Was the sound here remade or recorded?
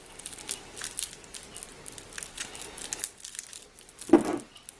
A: recorded